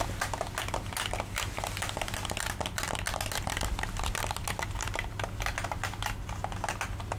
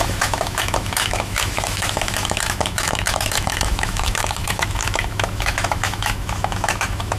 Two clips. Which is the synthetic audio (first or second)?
second